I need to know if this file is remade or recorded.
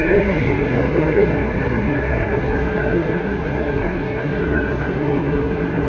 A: remade